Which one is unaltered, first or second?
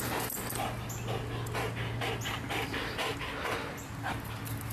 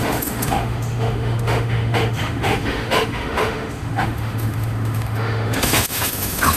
first